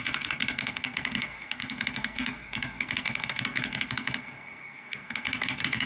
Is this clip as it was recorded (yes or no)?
no